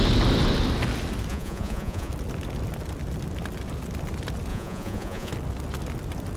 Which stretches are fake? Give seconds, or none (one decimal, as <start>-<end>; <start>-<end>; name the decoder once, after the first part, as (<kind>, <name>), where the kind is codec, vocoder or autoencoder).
1.3-2.1 (vocoder, Vocos); 4.5-5.3